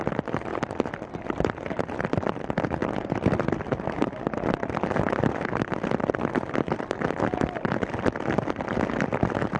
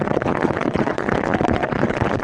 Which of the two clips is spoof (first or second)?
second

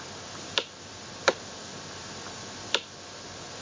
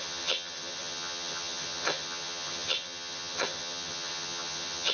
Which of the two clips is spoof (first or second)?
second